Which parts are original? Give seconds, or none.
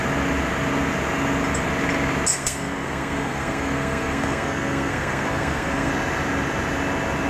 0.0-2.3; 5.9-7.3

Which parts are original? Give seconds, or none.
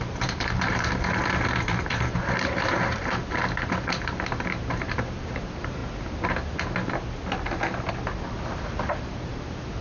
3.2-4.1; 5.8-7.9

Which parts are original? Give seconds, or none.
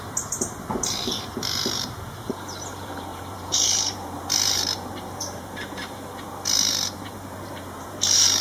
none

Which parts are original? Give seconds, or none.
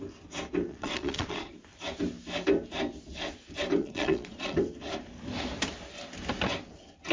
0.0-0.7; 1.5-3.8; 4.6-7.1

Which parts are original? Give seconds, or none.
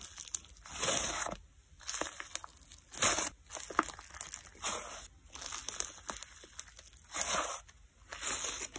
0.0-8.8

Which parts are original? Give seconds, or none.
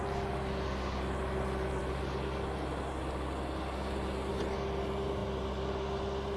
0.0-6.4